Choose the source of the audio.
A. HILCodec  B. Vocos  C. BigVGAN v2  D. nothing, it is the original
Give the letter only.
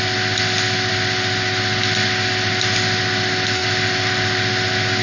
D